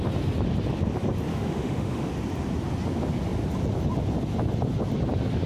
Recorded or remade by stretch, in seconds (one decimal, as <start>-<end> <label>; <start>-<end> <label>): 0.0-1.3 recorded; 1.3-2.1 remade; 2.1-5.5 recorded